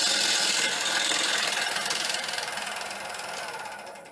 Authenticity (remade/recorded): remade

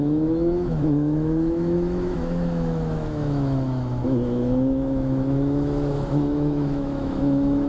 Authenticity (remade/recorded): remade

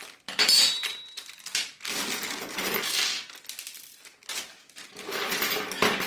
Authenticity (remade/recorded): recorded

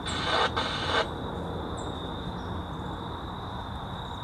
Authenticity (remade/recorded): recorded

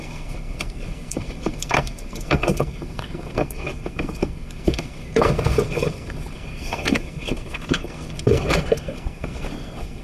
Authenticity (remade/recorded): remade